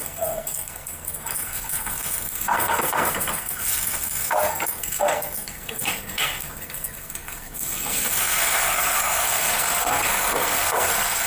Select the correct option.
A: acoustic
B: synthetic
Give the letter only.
B